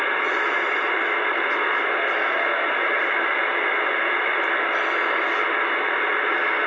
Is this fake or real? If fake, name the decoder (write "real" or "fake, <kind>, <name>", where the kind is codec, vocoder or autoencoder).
real